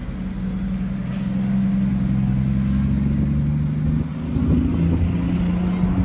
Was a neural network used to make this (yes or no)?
no